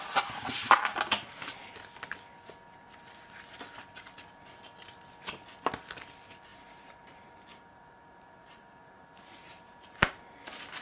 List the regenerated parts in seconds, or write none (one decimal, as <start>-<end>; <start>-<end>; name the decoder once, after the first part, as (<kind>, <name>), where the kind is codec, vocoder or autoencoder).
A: 6.5-10.1 (vocoder, BigVGAN v2)